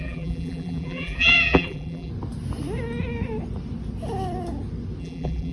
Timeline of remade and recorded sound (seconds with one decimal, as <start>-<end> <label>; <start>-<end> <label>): 0.0-2.1 remade; 2.1-5.0 recorded; 5.0-5.5 remade